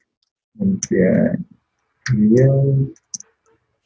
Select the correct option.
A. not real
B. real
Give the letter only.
B